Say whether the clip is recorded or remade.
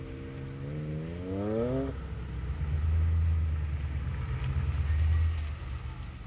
recorded